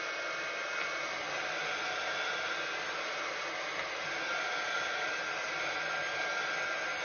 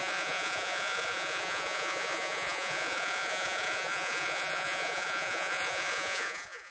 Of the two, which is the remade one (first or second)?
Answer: second